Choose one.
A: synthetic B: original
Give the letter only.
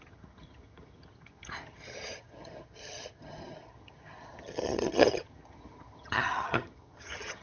A